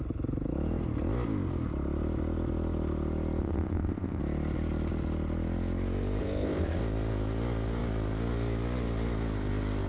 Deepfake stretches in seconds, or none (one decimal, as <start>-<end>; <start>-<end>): 3.4-4.2; 6.2-6.8